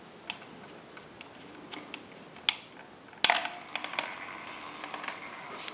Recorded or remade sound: recorded